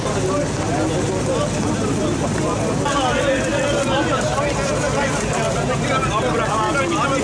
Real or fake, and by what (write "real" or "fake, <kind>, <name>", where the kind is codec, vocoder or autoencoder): real